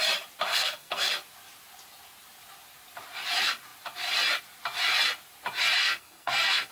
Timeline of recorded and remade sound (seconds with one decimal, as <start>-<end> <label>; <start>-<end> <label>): 0.0-0.5 recorded; 0.5-1.1 remade; 1.1-5.8 recorded; 5.8-6.7 remade